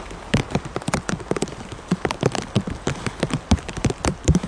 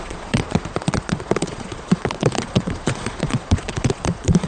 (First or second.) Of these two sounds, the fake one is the second